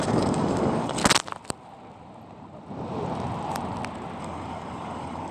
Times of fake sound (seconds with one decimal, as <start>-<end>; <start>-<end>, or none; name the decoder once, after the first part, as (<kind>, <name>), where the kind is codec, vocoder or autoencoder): 0.0-1.0 (codec, DAC); 4.2-5.3